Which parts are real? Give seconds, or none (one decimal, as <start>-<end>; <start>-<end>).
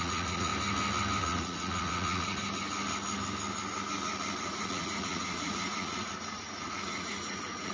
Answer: 0.5-1.2; 2.4-4.4